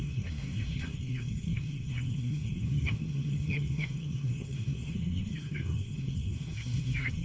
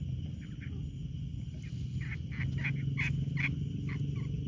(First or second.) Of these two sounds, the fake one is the first